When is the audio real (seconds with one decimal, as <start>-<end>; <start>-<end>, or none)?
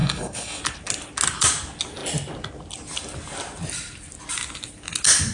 0.6-5.3